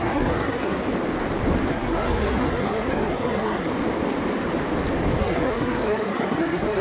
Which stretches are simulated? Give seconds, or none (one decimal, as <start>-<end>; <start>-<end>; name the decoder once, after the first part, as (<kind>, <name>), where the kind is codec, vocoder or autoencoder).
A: 0.0-0.8 (codec, SNAC); 1.7-3.7; 5.2-6.8